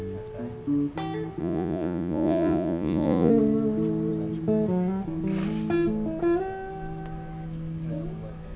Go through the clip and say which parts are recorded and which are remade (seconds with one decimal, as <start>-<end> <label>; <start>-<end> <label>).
0.0-1.4 recorded; 1.4-3.3 remade; 3.3-8.6 recorded